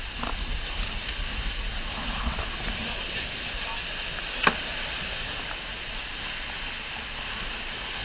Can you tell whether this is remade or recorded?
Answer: recorded